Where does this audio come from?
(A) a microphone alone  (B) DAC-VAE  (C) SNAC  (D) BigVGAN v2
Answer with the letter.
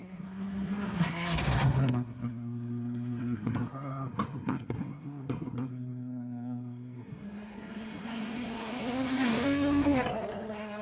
C